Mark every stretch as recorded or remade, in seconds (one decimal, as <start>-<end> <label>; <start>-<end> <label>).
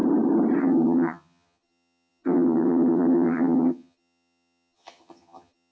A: 0.0-0.6 recorded; 0.6-5.7 remade